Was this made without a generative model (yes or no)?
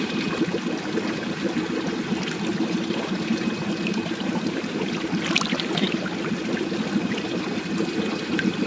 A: yes